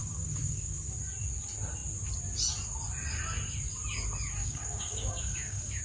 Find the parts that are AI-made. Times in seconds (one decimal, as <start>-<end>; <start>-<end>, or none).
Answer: 0.0-1.0; 4.4-5.8